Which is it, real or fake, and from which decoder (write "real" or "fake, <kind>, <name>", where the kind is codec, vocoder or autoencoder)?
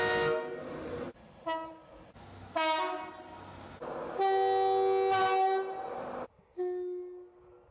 real